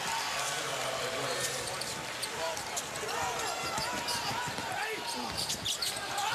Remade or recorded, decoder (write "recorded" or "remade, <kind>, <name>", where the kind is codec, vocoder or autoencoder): recorded